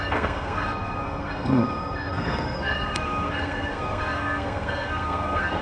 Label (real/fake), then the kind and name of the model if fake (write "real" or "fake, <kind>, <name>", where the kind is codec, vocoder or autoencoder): fake, codec, SNAC